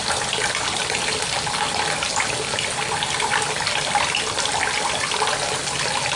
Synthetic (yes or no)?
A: no